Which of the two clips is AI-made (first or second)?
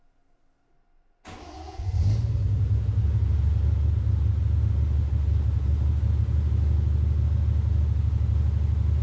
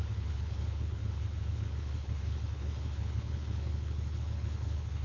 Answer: second